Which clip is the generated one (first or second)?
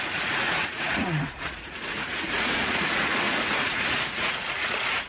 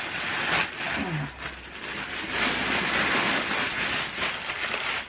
first